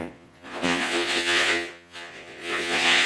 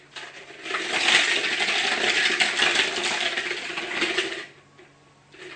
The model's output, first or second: first